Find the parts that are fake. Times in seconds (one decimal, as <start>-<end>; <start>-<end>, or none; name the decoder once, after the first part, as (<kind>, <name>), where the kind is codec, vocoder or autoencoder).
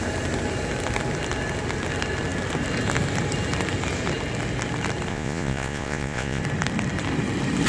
5.1-6.4 (vocoder, Vocos)